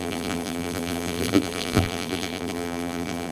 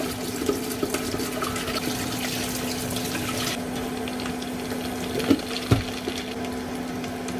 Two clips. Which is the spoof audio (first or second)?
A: first